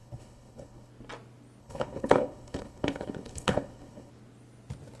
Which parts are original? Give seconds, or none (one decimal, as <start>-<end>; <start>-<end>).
0.9-1.6; 4.1-5.0